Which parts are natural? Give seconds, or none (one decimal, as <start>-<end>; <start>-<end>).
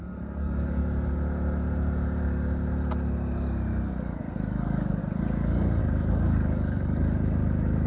0.8-4.2; 5.0-5.8